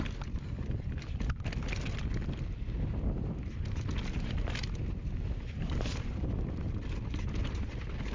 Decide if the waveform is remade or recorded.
remade